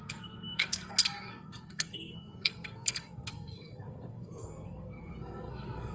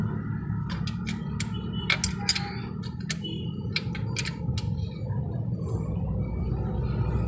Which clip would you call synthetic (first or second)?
first